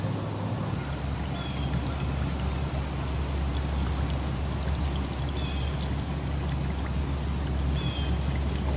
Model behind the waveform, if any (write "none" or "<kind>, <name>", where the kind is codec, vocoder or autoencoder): none